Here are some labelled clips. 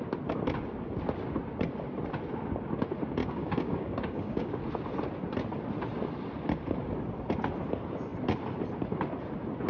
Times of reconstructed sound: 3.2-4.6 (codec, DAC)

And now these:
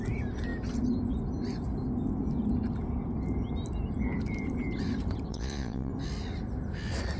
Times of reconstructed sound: 5.3-5.9 (vocoder, Vocos)

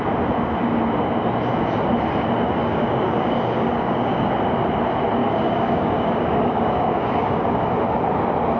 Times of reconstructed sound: 2.6-4.3 (codec, DAC); 5.2-7.7